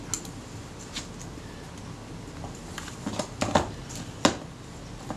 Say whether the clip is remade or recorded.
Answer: recorded